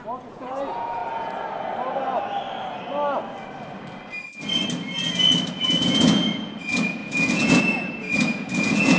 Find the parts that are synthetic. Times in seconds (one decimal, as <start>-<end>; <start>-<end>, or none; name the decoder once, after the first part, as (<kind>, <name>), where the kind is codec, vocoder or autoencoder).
0.0-1.0 (vocoder, Vocos); 5.5-9.0